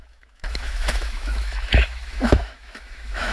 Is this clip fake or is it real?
fake